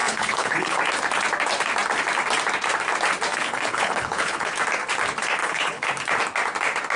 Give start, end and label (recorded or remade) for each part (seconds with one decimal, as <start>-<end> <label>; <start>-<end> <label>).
0.0-0.8 remade; 0.8-3.3 recorded; 3.3-4.5 remade; 4.5-5.4 recorded; 5.4-5.9 remade; 5.9-7.0 recorded